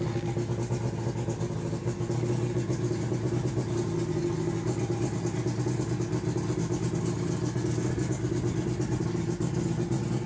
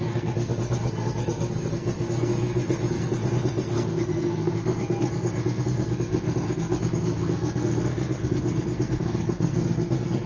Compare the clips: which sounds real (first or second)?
first